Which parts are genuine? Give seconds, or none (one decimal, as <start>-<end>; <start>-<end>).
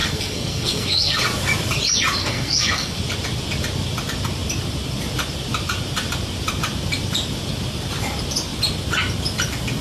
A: 1.2-2.2; 3.0-9.8